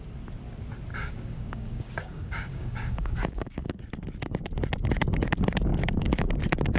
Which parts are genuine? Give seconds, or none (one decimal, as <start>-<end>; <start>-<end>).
0.0-0.9; 3.8-5.7; 6.3-6.8